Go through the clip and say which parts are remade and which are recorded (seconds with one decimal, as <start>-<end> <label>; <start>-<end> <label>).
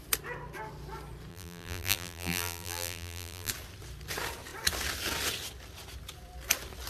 0.0-1.3 recorded; 1.3-3.5 remade; 3.5-6.9 recorded